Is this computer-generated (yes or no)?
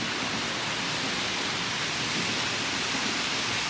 no